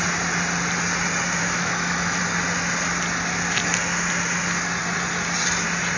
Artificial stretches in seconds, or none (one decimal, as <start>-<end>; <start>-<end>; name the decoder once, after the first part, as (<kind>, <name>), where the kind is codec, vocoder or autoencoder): 1.4-2.2 (autoencoder, DAC-VAE)